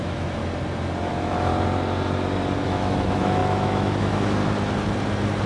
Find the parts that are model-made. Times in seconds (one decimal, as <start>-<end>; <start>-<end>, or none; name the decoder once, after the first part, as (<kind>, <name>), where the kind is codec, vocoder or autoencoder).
0.0-0.4 (autoencoder, DAC-VAE); 1.1-1.5; 2.6-4.4